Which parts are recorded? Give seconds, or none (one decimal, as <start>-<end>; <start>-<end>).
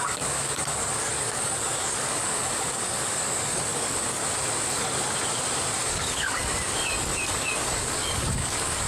4.2-5.8